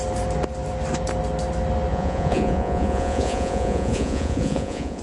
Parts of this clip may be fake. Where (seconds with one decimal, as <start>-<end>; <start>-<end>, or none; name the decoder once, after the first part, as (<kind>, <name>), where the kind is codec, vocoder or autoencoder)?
1.9-5.0 (vocoder, Vocos)